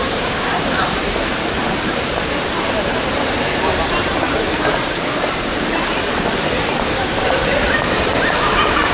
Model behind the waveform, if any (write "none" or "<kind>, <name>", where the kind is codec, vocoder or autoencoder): vocoder, BigVGAN v2